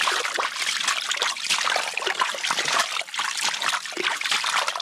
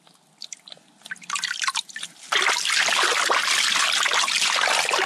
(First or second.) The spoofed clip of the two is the first